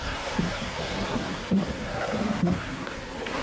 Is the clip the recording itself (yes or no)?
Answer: no